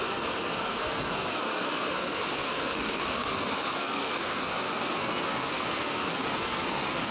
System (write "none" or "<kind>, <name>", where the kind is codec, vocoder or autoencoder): codec, SNAC